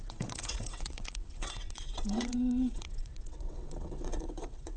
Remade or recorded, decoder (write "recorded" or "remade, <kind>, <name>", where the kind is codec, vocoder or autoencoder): remade, vocoder, WaveNeXt